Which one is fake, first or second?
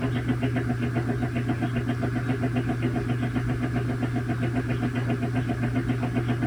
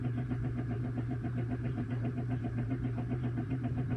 second